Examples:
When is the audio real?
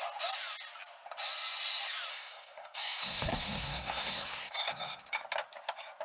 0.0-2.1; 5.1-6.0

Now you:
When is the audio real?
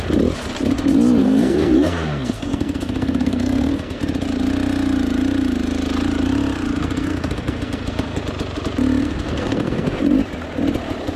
0.0-1.2; 4.0-6.8; 8.2-9.0; 10.0-11.2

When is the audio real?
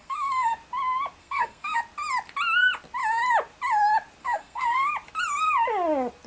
0.5-1.2; 1.8-4.2; 4.9-6.3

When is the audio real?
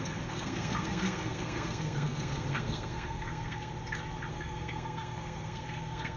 3.7-4.3